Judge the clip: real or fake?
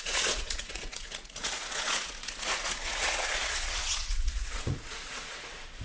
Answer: fake